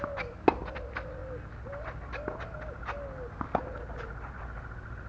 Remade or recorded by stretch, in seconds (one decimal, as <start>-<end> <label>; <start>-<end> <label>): 0.0-5.1 recorded

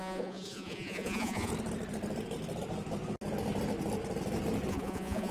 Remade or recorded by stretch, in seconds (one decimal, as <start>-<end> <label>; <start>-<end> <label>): 0.0-1.5 remade; 1.5-4.7 recorded; 4.7-5.3 remade

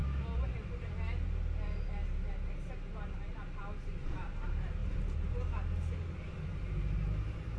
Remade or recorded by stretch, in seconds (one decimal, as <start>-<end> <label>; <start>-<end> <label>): 0.0-7.6 recorded

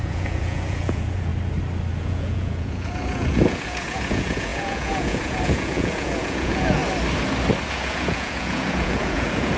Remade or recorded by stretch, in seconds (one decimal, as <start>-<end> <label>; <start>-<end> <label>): 0.0-1.3 remade; 1.3-2.0 recorded; 2.0-6.8 remade; 6.8-7.7 recorded; 7.7-9.6 remade

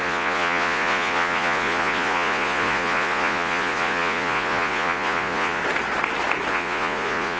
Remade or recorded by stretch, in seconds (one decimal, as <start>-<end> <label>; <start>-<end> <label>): 0.0-5.6 remade; 5.6-6.5 recorded; 6.5-7.4 remade

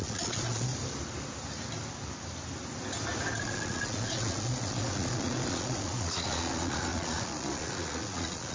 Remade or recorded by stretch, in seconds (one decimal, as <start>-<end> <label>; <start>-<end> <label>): 0.0-0.7 remade; 0.7-3.4 recorded; 3.4-8.5 remade